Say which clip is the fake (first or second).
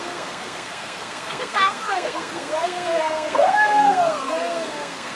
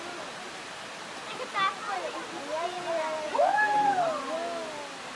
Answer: first